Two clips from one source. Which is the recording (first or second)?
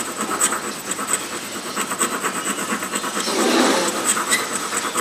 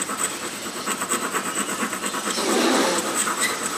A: first